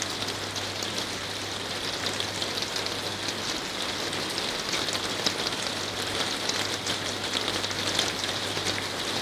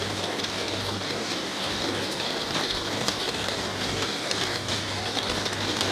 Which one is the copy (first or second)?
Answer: second